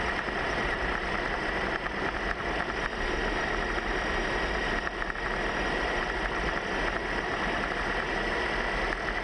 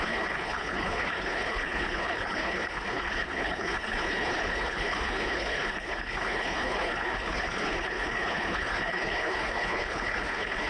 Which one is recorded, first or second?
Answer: first